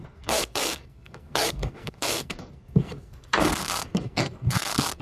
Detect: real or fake fake